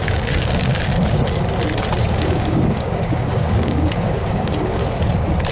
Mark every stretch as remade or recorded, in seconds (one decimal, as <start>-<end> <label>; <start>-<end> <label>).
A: 0.0-0.9 remade; 0.9-2.1 recorded; 2.1-4.8 remade; 4.8-5.5 recorded